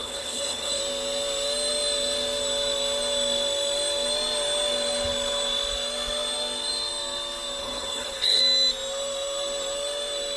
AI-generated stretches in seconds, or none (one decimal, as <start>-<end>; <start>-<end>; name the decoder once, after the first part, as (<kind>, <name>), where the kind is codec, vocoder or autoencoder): 0.0-0.8 (codec, HILCodec); 7.6-8.4